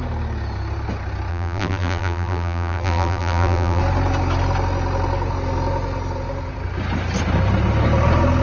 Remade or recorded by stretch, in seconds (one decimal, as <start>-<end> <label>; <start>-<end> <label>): 0.0-1.3 recorded; 1.3-3.8 remade; 3.8-8.4 recorded